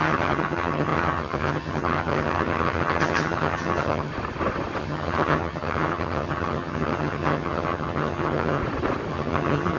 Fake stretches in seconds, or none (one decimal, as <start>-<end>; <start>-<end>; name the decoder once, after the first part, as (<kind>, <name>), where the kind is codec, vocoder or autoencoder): 0.0-4.1 (vocoder, HiFi-GAN); 4.8-8.6; 9.1-9.8